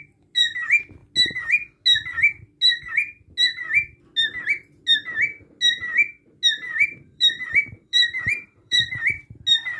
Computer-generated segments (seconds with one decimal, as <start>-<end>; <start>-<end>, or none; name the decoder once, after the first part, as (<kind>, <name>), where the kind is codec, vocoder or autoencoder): 6.6-9.1 (vocoder, BigVGAN v2)